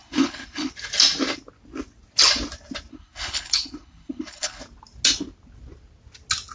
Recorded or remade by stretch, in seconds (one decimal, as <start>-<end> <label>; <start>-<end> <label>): 0.0-0.7 remade; 0.7-2.9 recorded; 2.9-4.6 remade; 4.6-6.5 recorded